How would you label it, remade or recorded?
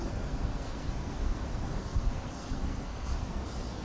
remade